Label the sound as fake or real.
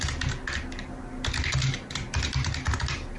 real